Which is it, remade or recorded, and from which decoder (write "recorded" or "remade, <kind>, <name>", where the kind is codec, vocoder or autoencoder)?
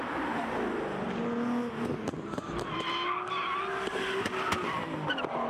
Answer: recorded